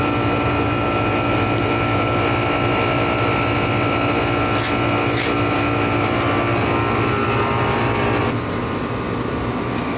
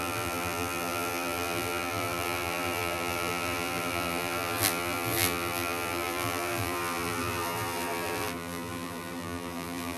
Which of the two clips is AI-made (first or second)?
second